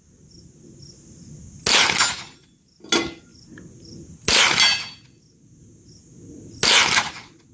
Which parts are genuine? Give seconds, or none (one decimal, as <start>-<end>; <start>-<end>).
0.0-7.5